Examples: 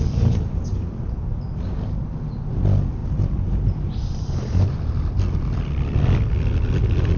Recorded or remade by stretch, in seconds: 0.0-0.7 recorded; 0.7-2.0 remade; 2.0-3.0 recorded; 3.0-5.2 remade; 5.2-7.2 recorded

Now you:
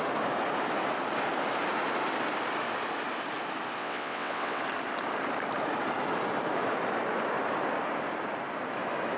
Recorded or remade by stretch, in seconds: 0.0-3.8 recorded; 3.8-4.6 remade; 4.6-9.2 recorded

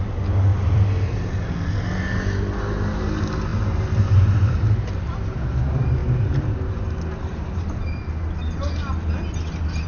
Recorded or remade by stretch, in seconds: 0.0-0.5 recorded; 0.5-1.2 remade; 1.2-3.5 recorded; 3.5-4.6 remade; 4.6-9.9 recorded

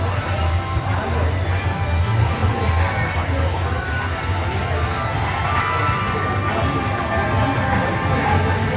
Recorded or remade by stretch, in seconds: 0.0-8.8 recorded

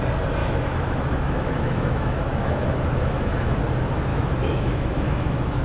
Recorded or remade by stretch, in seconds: 0.0-0.4 recorded; 0.4-3.6 remade; 3.6-4.1 recorded; 4.1-5.6 remade

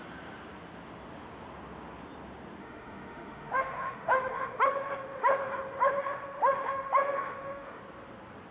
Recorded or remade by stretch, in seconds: 0.0-2.6 recorded; 2.6-5.5 remade; 5.5-6.0 recorded; 6.0-7.8 remade; 7.8-8.5 recorded

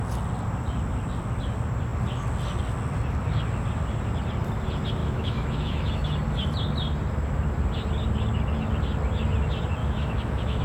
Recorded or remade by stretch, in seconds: 0.0-5.0 recorded; 5.0-5.9 remade; 5.9-9.8 recorded; 9.8-10.6 remade

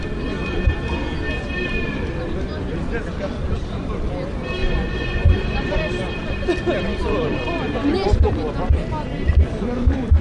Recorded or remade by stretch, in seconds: 0.0-4.6 recorded; 4.6-5.8 remade; 5.8-10.2 recorded